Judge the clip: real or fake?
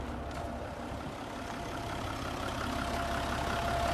real